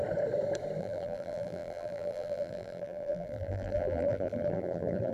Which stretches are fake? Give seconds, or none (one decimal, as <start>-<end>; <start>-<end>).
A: 0.8-5.1